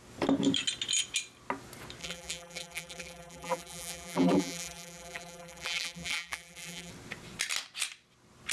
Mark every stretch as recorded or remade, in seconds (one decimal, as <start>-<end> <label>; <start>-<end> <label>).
0.0-2.0 recorded; 2.0-6.9 remade; 6.9-8.5 recorded